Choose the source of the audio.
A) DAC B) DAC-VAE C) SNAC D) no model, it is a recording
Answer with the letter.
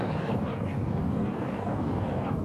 A